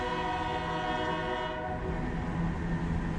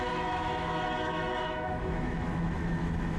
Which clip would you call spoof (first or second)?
second